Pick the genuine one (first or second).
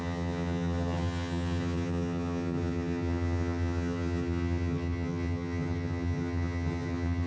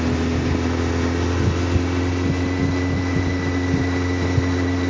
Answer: second